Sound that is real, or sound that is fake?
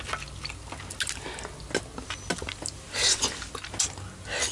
real